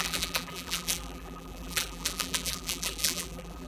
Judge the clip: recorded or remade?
remade